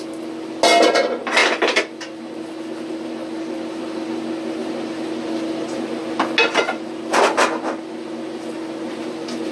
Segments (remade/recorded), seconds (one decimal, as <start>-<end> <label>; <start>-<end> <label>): 0.0-9.5 recorded

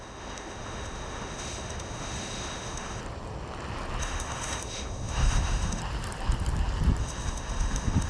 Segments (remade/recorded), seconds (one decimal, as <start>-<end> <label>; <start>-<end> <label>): 0.0-3.0 remade; 3.0-4.0 recorded; 4.0-5.8 remade; 5.8-7.0 recorded; 7.0-8.1 remade

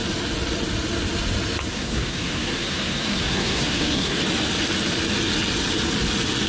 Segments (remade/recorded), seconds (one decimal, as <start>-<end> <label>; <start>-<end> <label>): 0.0-1.7 recorded; 1.7-4.2 remade; 4.2-6.5 recorded